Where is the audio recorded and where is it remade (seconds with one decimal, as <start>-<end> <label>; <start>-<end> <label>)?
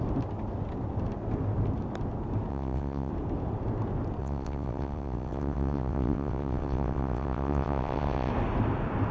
0.0-2.5 recorded; 2.5-3.1 remade; 3.1-4.2 recorded; 4.2-8.3 remade; 8.3-9.1 recorded